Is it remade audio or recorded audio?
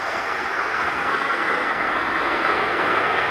remade